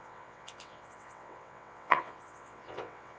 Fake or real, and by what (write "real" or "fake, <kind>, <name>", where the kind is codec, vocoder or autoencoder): fake, vocoder, WaveNeXt